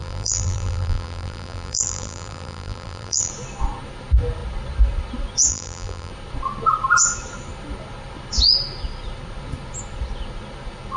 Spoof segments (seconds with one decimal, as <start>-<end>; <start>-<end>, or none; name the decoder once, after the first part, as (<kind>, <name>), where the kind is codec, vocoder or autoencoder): 0.0-3.3 (vocoder, BigVGAN v2); 5.5-6.1